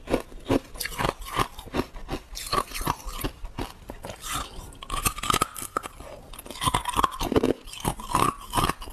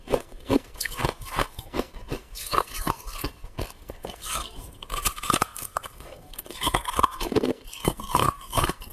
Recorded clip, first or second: first